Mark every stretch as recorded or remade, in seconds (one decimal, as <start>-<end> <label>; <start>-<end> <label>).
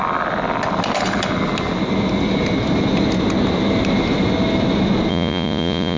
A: 0.0-5.1 recorded; 5.1-6.0 remade